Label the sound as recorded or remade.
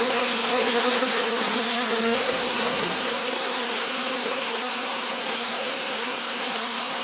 remade